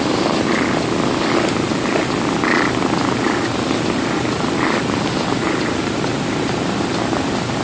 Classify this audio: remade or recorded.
recorded